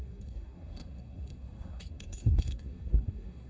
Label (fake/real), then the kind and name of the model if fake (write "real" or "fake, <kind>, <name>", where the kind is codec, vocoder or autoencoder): fake, codec, SNAC